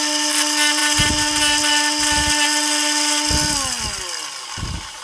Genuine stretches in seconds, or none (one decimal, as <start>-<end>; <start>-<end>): 0.0-5.0